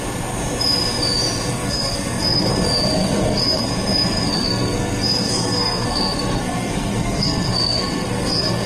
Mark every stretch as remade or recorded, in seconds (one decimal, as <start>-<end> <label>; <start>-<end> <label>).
0.0-1.5 recorded; 1.5-2.5 remade; 2.5-3.0 recorded; 3.0-3.7 remade; 3.7-4.3 recorded; 4.3-8.7 remade